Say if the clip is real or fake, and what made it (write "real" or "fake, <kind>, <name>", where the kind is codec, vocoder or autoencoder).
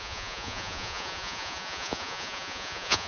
fake, vocoder, Vocos